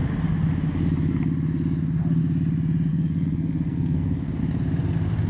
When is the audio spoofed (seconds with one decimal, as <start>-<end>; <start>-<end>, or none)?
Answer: 2.9-4.4